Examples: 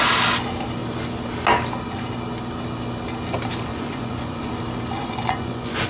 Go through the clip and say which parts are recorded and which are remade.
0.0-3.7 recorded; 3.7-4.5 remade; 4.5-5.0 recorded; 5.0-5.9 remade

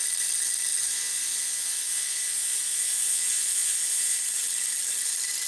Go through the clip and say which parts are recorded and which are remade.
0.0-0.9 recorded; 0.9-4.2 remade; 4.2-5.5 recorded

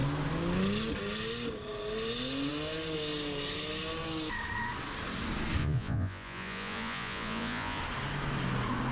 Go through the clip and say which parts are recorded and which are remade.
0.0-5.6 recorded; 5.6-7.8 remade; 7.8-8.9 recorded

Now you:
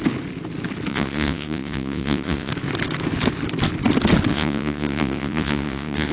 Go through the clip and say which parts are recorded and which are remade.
0.0-0.9 recorded; 0.9-2.5 remade; 2.5-4.3 recorded; 4.3-6.1 remade

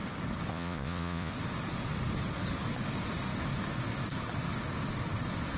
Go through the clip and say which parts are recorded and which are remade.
0.0-0.5 recorded; 0.5-1.3 remade; 1.3-5.6 recorded

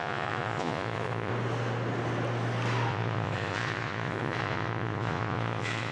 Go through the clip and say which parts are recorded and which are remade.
0.0-1.3 remade; 1.3-2.9 recorded; 2.9-5.9 remade